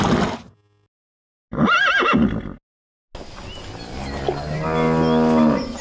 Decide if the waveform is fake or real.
real